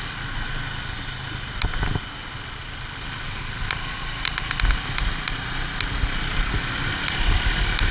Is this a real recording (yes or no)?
yes